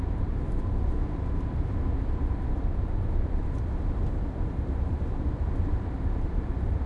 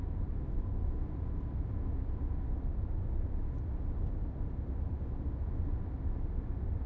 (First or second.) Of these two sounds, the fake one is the first